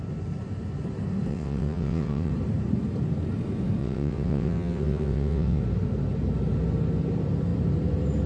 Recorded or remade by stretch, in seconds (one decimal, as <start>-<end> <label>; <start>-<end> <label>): 0.0-1.3 recorded; 1.3-2.3 remade; 2.3-3.8 recorded; 3.8-5.6 remade; 5.6-8.3 recorded